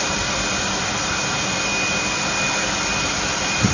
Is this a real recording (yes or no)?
yes